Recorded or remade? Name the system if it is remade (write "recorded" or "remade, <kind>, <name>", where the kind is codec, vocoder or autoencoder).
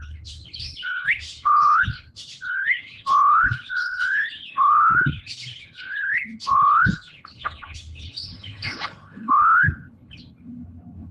remade, codec, HILCodec